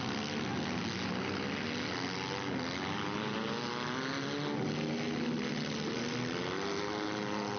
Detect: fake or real real